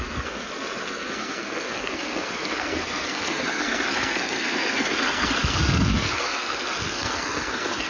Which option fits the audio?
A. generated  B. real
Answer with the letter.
A